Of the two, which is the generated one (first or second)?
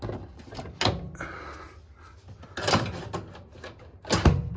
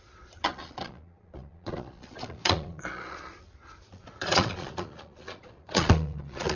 second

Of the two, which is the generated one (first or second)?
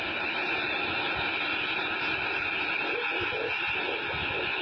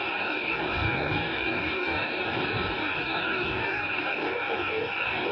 second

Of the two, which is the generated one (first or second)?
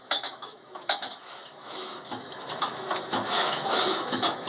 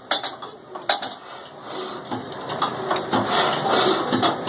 first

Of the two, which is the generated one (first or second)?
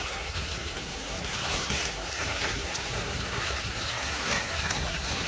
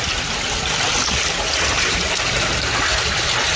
first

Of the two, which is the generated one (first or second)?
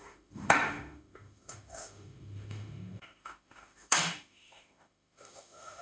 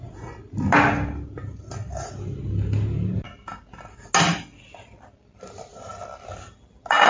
first